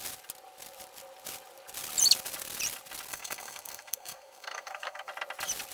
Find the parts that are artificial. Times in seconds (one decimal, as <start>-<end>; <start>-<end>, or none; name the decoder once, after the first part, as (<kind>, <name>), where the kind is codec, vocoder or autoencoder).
3.1-5.1 (codec, SNAC)